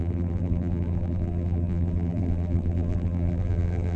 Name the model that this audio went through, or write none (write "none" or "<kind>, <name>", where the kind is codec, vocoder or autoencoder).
vocoder, BigVGAN v2